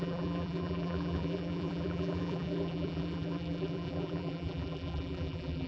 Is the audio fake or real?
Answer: fake